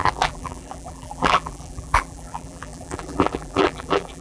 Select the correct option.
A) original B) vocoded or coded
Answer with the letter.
B